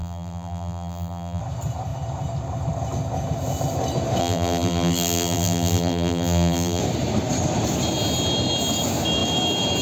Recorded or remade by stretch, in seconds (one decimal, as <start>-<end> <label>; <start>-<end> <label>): 0.0-1.4 remade; 1.4-4.2 recorded; 4.2-6.8 remade; 6.8-9.8 recorded